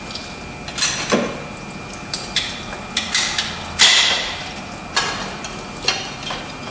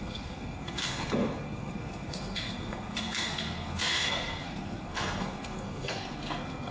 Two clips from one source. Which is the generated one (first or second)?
second